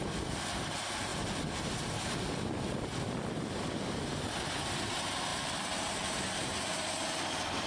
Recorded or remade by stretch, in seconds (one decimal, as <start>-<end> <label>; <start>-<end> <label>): 0.0-1.1 remade; 1.1-3.3 recorded; 3.3-7.7 remade